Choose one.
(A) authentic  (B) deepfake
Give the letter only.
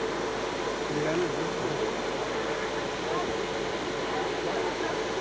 A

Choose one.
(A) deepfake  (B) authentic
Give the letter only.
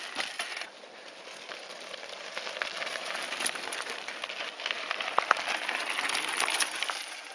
B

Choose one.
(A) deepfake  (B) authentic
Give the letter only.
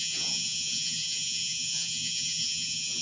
A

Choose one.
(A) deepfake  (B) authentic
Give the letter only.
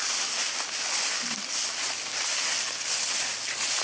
B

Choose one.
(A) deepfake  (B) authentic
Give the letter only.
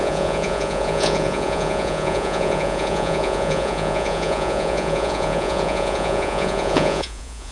A